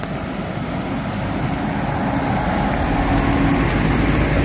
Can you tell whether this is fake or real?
real